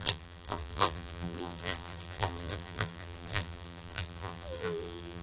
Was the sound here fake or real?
fake